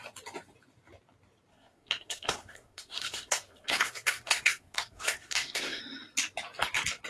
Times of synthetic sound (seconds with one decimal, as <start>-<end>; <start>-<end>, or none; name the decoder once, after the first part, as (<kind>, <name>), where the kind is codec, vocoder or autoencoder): 1.5-5.8 (codec, SNAC)